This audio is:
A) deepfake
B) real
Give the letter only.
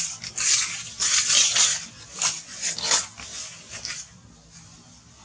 B